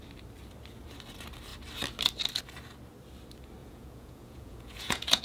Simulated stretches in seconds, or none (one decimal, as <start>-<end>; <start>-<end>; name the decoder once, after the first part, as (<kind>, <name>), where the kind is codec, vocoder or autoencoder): 3.6-5.2 (vocoder, Vocos)